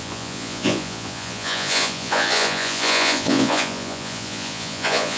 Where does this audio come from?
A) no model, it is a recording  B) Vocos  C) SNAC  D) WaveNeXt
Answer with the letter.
B